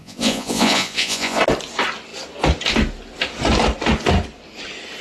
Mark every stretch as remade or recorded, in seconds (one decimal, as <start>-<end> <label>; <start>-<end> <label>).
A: 0.0-1.4 remade; 1.4-5.0 recorded